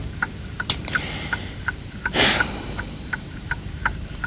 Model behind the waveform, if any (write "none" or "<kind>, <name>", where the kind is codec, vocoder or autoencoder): vocoder, BigVGAN v2